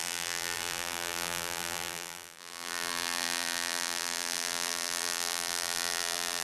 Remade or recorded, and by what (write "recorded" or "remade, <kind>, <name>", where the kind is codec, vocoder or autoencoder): remade, vocoder, BigVGAN v2